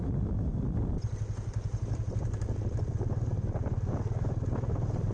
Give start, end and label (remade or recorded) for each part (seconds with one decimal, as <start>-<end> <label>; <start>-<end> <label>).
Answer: 0.0-5.1 recorded